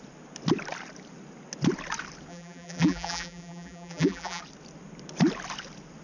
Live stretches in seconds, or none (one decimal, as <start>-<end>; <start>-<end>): 0.0-2.3; 4.4-6.0